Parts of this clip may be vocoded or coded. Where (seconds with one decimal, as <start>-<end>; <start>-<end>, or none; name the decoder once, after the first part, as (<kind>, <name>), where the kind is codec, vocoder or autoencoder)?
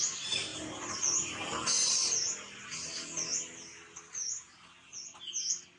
none